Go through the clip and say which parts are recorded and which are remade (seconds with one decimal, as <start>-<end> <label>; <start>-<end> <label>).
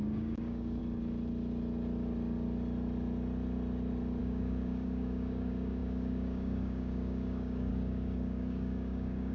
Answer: 0.0-0.8 remade; 0.8-4.2 recorded; 4.2-9.3 remade